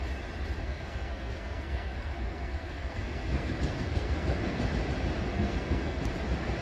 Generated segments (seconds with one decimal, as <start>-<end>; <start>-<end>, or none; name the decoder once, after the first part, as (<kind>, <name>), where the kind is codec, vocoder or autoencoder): 0.6-4.6 (codec, SNAC); 5.3-6.0